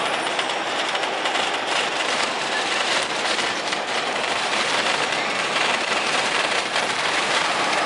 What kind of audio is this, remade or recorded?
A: remade